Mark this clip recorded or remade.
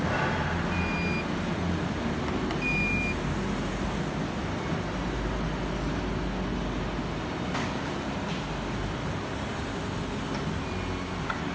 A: recorded